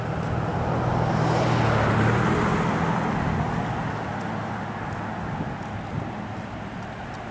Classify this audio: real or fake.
real